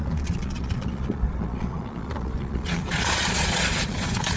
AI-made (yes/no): yes